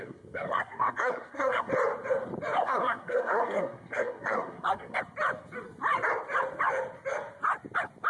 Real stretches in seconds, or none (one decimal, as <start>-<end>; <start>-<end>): 1.7-2.6; 5.0-8.1